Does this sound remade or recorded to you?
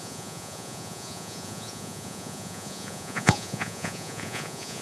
remade